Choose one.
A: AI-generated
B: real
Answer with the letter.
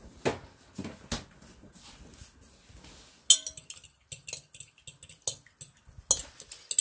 B